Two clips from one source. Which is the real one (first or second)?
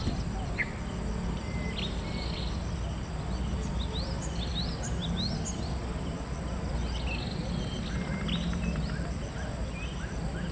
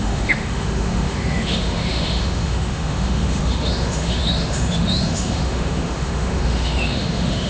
first